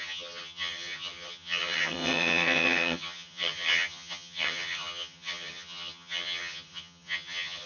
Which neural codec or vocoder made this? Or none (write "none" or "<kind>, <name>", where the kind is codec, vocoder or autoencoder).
vocoder, HiFi-GAN